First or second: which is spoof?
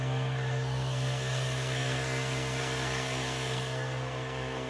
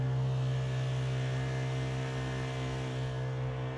first